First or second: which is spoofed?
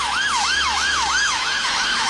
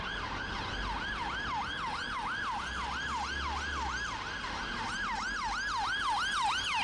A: first